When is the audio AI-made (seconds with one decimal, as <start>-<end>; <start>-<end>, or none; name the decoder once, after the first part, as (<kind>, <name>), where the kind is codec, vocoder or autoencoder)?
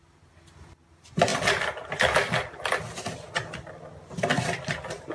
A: none